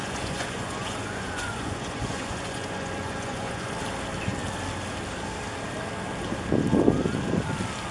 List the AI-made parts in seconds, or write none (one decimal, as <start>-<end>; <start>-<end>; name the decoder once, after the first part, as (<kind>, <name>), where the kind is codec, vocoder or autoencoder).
0.0-3.7 (vocoder, Vocos)